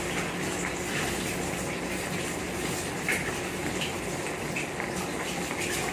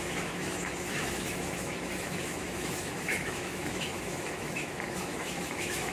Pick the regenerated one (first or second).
second